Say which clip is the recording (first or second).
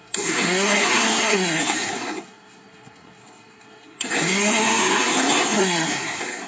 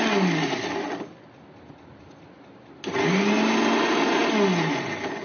second